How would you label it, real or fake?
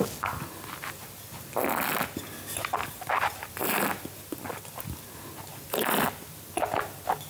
real